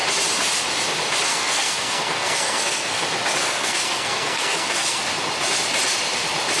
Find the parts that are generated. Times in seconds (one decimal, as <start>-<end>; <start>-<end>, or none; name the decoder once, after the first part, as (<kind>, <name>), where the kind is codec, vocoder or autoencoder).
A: 1.3-3.0 (codec, SNAC); 3.4-5.0

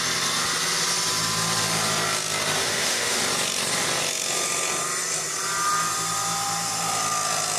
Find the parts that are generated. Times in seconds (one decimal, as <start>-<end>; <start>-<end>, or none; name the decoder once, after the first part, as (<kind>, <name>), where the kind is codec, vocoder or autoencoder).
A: 2.6-3.2 (autoencoder, DAC-VAE)

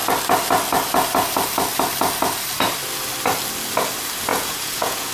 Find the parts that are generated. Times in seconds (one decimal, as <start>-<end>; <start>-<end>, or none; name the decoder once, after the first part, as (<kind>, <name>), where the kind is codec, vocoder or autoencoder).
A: 4.3-5.1 (vocoder, Vocos)

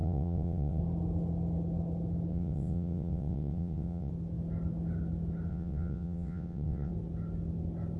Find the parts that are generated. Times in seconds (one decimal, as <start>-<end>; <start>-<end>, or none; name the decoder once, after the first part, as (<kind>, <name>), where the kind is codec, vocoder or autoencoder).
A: 0.0-0.8 (vocoder, WaveNeXt); 2.3-4.1; 5.5-6.9

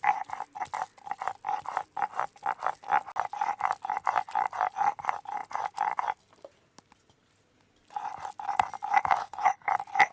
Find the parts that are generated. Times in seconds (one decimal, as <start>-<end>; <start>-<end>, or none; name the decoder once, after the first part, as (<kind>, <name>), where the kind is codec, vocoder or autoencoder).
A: 9.2-9.7 (codec, HILCodec)

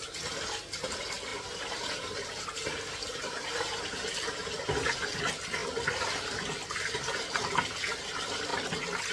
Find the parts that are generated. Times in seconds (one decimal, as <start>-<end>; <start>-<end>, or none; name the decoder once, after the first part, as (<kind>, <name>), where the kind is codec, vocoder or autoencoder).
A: 0.0-8.5 (vocoder, BigVGAN v2)